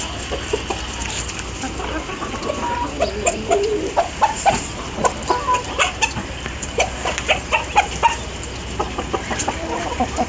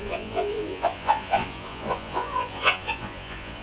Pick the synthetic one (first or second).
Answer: second